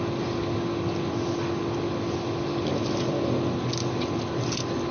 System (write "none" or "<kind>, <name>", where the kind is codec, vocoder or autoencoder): none